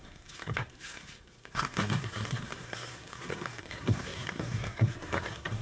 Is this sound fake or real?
fake